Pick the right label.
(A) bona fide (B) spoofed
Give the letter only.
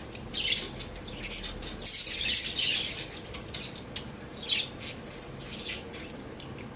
A